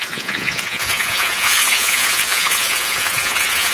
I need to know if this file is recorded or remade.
remade